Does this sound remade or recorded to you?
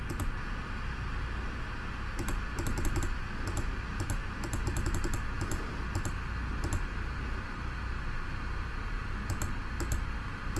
recorded